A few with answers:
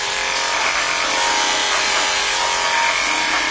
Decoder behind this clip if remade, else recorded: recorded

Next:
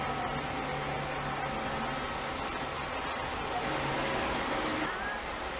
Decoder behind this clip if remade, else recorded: recorded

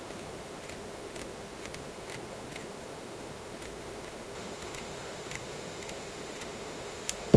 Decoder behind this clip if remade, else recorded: remade, autoencoder, DAC-VAE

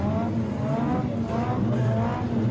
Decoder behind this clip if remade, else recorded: recorded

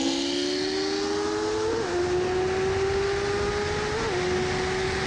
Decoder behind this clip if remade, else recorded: recorded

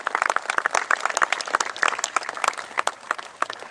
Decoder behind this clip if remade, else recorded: recorded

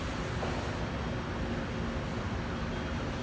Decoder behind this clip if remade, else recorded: recorded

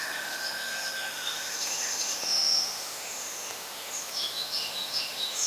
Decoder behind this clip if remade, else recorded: remade, autoencoder, DAC-VAE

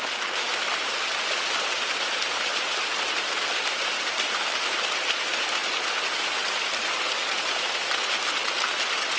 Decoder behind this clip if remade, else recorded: recorded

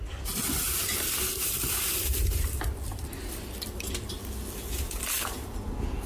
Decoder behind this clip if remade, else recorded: recorded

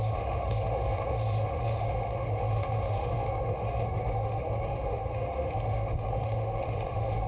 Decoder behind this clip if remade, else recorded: remade, autoencoder, DAC-VAE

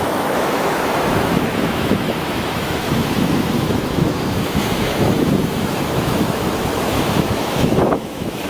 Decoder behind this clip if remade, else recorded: remade, autoencoder, DAC-VAE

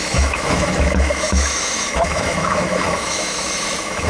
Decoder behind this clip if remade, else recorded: remade, autoencoder, DAC-VAE